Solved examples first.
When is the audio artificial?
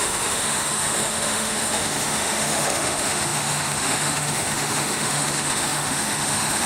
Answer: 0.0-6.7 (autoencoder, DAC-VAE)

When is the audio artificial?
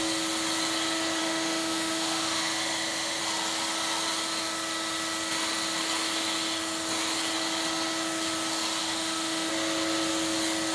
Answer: 1.2-3.2 (autoencoder, DAC-VAE); 8.8-9.5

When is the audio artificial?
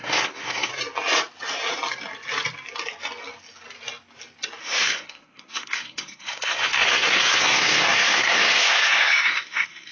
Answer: 0.0-0.7 (codec, SNAC); 4.6-9.9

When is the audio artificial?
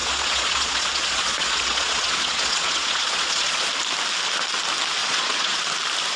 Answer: 0.0-3.7 (vocoder, Vocos); 5.0-5.6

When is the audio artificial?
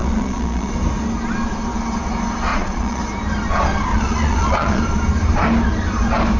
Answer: 0.0-0.7 (vocoder, Vocos); 2.5-3.0; 3.9-4.8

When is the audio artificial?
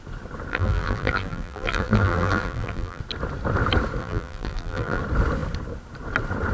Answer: 0.5-3.0 (vocoder, BigVGAN v2); 4.0-5.0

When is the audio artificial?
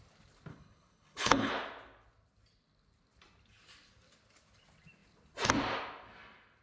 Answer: 0.5-1.5 (codec, HILCodec)